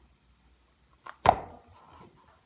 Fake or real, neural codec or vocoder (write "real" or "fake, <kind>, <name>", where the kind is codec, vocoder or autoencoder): fake, vocoder, BigVGAN v2